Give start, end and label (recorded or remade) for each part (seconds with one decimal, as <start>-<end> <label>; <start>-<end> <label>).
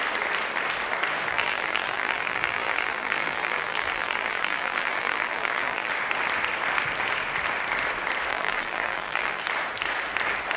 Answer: 0.0-1.3 recorded; 1.3-5.9 remade; 5.9-8.3 recorded; 8.3-9.4 remade; 9.4-10.6 recorded